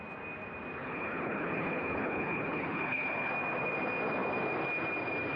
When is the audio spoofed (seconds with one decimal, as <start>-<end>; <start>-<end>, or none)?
0.8-3.3

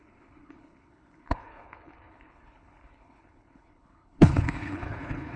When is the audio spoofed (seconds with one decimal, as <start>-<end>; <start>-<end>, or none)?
0.0-5.4

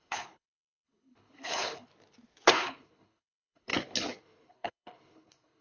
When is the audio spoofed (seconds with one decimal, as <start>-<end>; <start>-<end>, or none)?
0.0-1.9; 2.5-3.7; 4.2-5.6

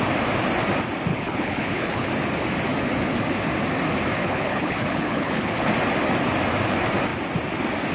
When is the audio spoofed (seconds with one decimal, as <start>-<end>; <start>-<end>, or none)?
1.1-2.1; 4.2-5.7